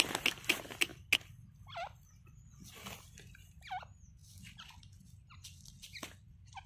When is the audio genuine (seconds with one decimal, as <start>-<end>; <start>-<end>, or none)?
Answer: 0.0-6.7